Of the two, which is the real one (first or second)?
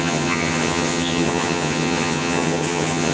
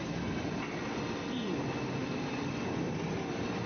second